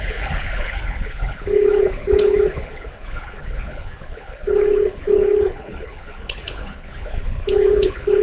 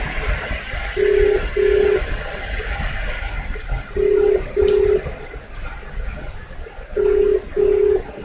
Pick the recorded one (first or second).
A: second